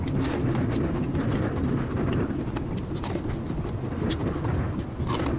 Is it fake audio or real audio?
real